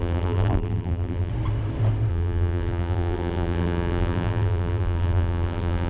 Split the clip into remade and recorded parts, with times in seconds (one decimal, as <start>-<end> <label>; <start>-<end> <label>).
0.0-1.3 remade; 1.3-2.1 recorded; 2.1-5.9 remade